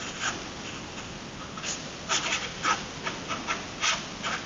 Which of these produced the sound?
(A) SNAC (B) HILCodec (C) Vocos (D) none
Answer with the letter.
D